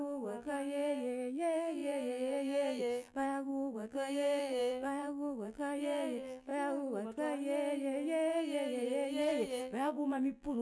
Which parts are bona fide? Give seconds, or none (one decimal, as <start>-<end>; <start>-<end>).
6.5-9.6